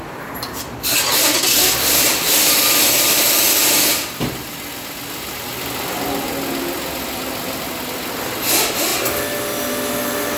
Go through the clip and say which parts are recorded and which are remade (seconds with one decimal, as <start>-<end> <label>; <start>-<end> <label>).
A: 0.0-10.4 recorded